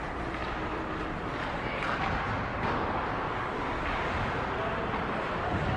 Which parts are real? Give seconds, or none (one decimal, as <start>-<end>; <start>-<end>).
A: 0.0-2.5; 4.0-5.8